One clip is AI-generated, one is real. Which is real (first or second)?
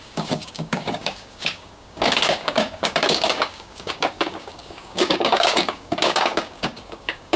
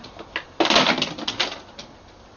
second